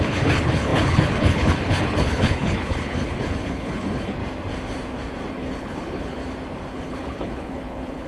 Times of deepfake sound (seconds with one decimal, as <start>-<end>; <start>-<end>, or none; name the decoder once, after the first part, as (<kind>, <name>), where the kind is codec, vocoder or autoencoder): 0.0-4.2 (codec, HILCodec); 5.3-6.2; 6.7-8.1